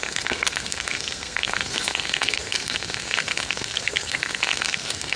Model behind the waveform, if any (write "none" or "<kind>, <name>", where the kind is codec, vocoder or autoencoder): codec, SNAC